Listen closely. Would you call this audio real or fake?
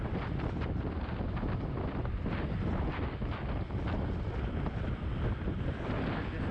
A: real